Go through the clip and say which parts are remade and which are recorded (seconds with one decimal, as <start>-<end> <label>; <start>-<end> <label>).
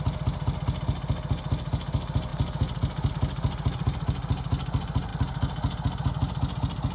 0.0-6.9 recorded